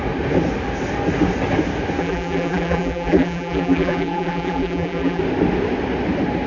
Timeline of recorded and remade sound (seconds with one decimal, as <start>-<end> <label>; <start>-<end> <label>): 0.0-2.0 recorded; 2.0-5.2 remade; 5.2-6.5 recorded